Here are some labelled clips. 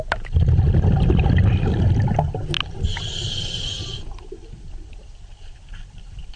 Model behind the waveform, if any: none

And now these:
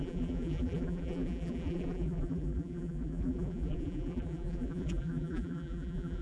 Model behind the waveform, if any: vocoder, BigVGAN v2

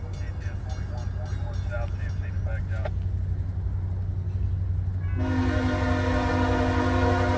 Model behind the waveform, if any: none